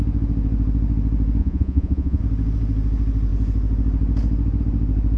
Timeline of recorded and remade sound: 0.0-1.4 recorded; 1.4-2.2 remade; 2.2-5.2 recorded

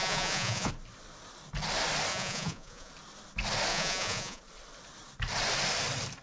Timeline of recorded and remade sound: 0.0-0.7 remade; 0.7-2.1 recorded; 2.1-2.9 remade; 2.9-3.7 recorded; 3.7-4.4 remade; 4.4-6.2 recorded